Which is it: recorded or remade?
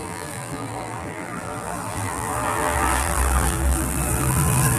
remade